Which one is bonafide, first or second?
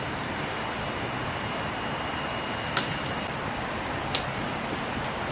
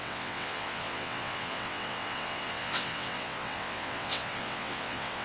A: first